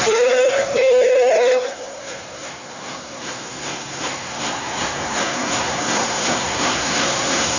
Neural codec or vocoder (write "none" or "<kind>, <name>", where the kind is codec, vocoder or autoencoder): codec, SNAC